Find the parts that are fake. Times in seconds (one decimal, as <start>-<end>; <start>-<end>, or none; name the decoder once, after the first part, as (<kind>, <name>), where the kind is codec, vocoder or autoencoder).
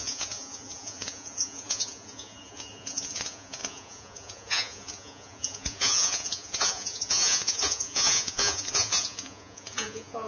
0.0-10.3 (vocoder, Vocos)